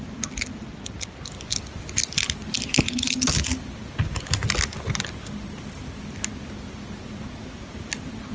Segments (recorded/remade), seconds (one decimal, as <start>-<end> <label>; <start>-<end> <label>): 0.0-8.3 recorded